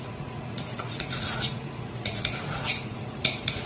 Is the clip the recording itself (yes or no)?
no